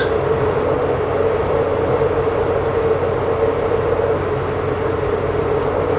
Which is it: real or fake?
real